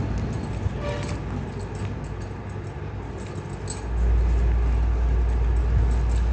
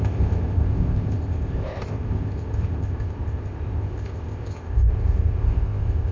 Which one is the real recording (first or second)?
first